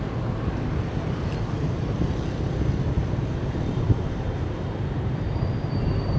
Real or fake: fake